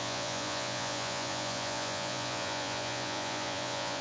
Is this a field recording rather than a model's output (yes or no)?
no